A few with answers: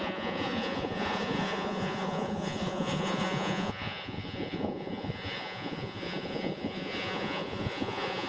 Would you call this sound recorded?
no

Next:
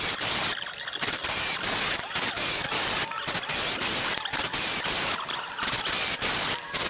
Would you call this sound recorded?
yes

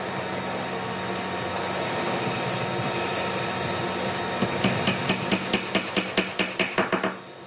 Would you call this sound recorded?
yes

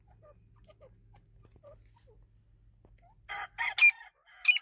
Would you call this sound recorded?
yes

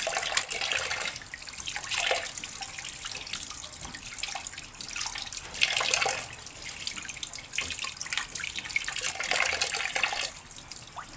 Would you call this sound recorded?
yes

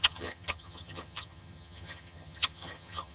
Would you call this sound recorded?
no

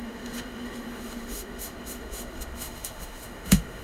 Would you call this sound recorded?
no